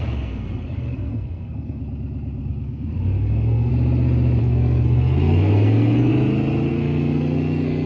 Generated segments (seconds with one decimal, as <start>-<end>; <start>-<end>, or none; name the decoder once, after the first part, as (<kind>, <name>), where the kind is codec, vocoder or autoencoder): 0.0-1.8 (codec, SNAC); 2.4-3.7; 4.4-6.1; 6.7-7.9